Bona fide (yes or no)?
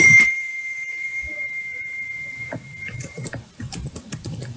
no